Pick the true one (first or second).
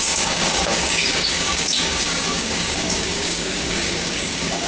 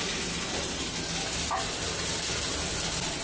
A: second